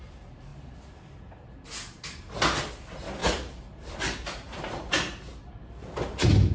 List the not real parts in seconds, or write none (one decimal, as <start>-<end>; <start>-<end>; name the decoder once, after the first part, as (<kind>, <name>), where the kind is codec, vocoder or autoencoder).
3.2-5.5 (vocoder, BigVGAN v2)